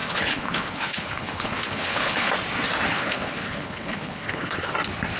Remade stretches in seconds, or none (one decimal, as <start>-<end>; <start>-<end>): 0.0-2.3; 2.9-4.7